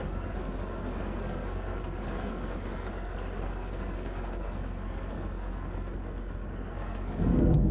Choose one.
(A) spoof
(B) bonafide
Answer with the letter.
A